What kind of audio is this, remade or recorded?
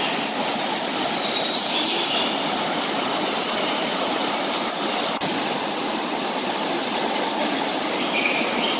recorded